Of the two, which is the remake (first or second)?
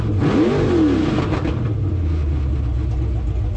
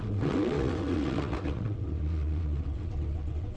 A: second